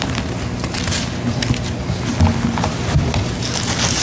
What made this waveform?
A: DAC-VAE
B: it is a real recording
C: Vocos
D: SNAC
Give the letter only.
B